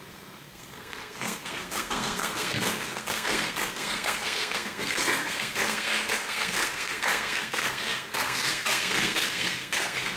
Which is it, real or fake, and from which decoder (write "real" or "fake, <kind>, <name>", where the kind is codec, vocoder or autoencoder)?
fake, codec, SNAC